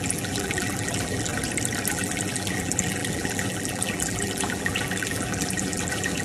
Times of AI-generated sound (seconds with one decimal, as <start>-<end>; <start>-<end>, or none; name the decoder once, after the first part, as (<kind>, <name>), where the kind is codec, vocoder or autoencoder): 0.0-1.3 (vocoder, BigVGAN v2); 1.9-6.2